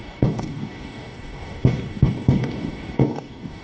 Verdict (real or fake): fake